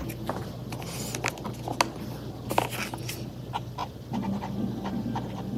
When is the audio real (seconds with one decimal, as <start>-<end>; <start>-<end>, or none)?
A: 0.0-3.8